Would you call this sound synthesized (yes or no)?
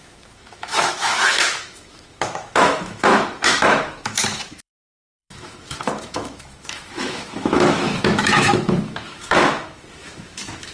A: yes